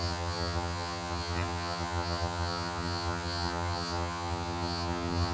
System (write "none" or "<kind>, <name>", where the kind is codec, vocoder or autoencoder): vocoder, HiFi-GAN